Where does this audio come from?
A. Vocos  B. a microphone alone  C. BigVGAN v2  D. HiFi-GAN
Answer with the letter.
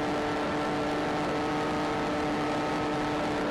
B